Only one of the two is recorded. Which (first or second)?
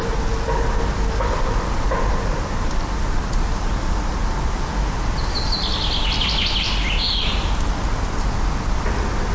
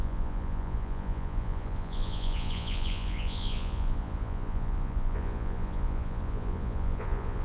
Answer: first